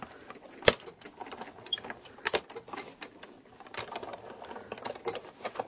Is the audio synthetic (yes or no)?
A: no